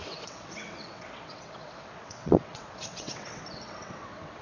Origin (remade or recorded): remade